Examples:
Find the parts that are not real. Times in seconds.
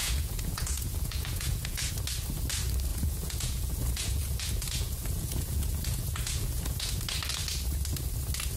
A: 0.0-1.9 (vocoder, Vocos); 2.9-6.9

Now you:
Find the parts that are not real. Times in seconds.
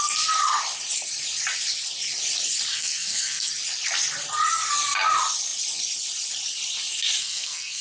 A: 2.7-3.5 (codec, SNAC); 7.2-7.8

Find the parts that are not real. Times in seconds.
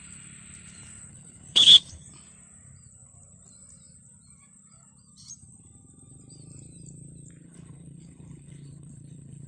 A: 1.1-2.0 (codec, HILCodec); 7.4-9.5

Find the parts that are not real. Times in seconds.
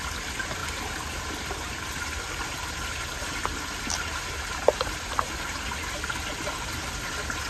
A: none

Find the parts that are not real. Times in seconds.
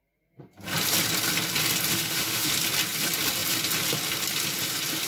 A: 1.9-2.5 (autoencoder, DAC-VAE)